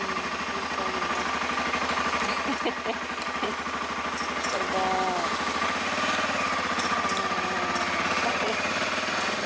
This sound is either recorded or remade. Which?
recorded